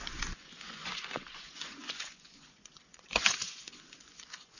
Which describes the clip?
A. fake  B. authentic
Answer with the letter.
A